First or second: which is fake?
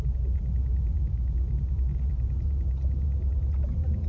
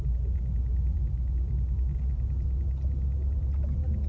first